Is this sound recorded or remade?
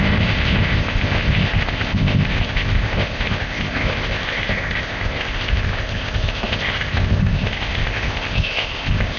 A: remade